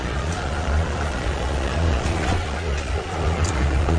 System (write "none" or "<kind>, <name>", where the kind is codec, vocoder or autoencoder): vocoder, Vocos